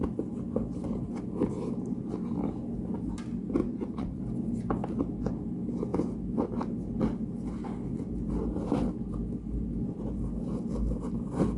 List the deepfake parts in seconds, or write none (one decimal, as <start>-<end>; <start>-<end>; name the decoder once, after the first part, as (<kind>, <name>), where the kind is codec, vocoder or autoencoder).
3.6-4.2 (vocoder, Vocos)

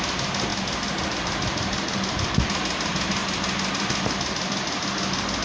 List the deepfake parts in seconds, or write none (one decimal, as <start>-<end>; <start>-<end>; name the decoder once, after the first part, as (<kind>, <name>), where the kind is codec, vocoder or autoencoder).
none

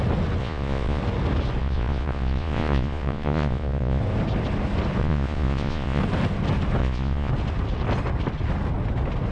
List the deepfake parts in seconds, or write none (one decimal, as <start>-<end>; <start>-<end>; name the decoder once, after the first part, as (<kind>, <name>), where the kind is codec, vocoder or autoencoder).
0.4-1.0 (vocoder, Vocos); 1.6-4.0; 5.0-6.0; 6.8-7.3

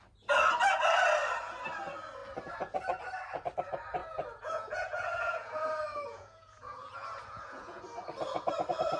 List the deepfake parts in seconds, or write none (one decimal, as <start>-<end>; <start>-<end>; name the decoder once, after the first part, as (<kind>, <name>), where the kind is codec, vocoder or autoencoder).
4.0-7.8 (vocoder, Vocos)

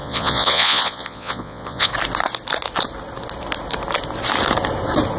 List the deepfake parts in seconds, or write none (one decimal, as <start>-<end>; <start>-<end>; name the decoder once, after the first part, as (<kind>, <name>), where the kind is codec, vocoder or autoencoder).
0.0-1.9 (vocoder, Vocos)